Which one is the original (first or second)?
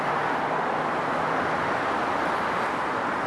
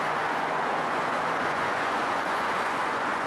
first